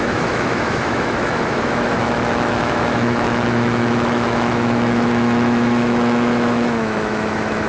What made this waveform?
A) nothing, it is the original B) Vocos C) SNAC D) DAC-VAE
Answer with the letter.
D